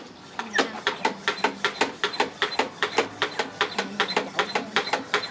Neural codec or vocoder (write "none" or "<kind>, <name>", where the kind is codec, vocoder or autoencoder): none